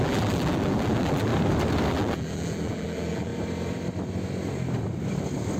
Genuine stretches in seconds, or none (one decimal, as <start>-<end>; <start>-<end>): 1.3-1.9; 3.3-5.6